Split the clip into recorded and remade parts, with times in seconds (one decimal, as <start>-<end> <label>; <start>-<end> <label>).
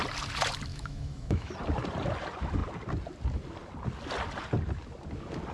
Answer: 0.0-0.7 recorded; 0.7-1.5 remade; 1.5-5.5 recorded